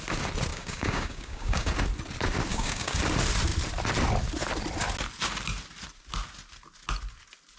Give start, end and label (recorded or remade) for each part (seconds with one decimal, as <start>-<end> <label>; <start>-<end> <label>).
0.0-0.5 recorded; 0.5-1.7 remade; 1.7-2.5 recorded; 2.5-3.0 remade; 3.0-7.6 recorded